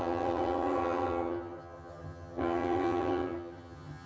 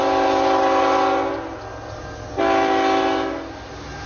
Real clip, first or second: second